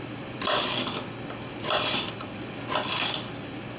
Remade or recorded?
remade